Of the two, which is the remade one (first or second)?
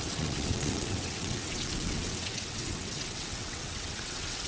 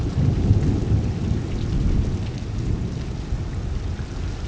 first